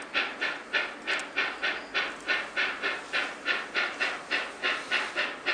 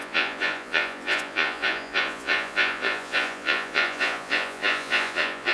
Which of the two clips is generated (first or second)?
second